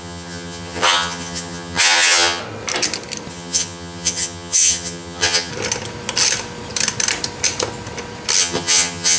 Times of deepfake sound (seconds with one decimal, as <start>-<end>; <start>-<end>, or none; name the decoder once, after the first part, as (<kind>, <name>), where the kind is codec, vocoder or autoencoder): 0.0-2.4 (vocoder, HiFi-GAN); 3.3-5.5; 8.4-9.2